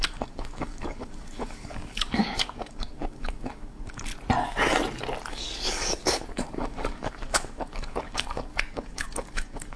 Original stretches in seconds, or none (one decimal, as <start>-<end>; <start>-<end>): 4.1-5.3